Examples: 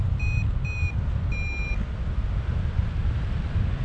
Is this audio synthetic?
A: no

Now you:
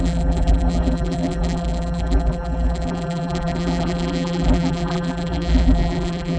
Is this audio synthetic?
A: yes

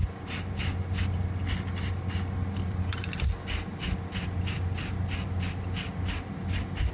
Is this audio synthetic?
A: no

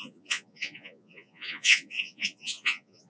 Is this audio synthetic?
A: yes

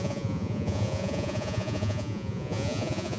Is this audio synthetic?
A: yes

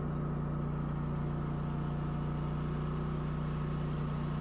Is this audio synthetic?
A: no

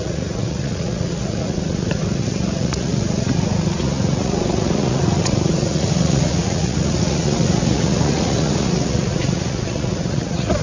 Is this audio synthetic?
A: yes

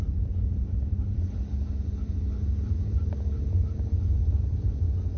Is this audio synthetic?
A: yes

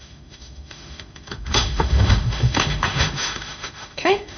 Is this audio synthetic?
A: yes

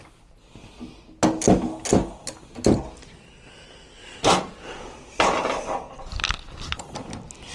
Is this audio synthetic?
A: no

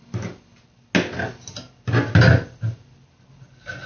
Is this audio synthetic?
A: no